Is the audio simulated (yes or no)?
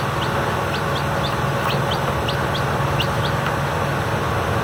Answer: no